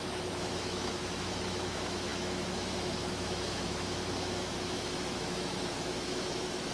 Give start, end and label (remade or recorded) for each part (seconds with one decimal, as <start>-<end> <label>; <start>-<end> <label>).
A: 0.0-6.7 remade